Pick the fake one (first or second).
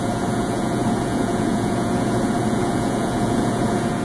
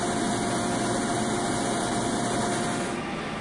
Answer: first